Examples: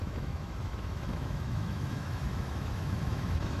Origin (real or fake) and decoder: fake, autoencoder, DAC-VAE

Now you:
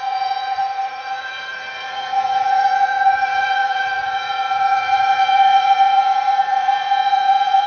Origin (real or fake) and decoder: fake, vocoder, Vocos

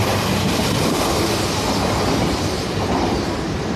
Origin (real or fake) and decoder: real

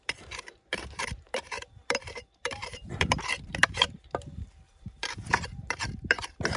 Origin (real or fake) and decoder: fake, vocoder, BigVGAN v2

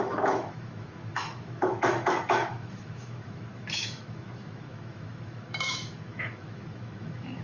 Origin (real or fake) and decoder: fake, autoencoder, DAC-VAE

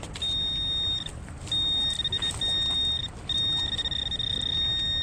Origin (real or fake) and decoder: real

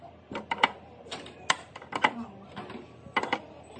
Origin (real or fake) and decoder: real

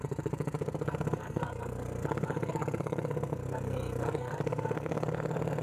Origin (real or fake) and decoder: fake, codec, SNAC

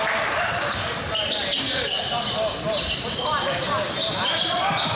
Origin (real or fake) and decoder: real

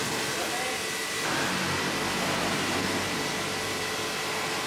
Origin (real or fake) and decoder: real